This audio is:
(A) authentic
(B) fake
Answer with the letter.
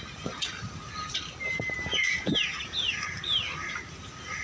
A